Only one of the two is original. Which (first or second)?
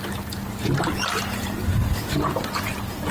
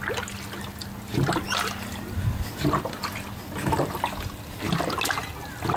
second